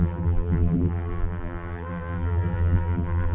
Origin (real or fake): fake